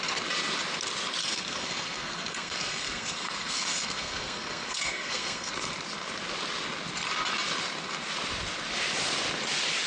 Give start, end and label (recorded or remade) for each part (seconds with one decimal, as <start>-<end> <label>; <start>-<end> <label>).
0.0-1.2 recorded; 1.2-5.5 remade; 5.5-9.9 recorded